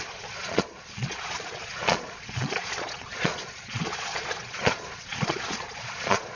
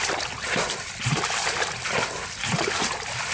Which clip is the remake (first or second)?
first